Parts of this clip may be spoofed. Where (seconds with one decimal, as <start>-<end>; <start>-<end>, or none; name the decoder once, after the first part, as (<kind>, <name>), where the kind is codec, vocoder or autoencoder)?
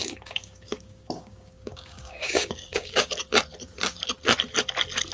0.0-3.1 (codec, DAC)